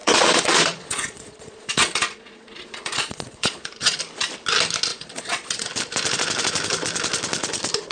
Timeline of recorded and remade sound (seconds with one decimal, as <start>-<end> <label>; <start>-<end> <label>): 0.0-4.0 remade; 4.0-4.9 recorded; 4.9-5.7 remade; 5.7-7.9 recorded